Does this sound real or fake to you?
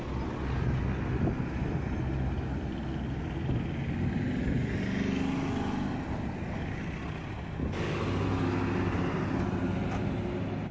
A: real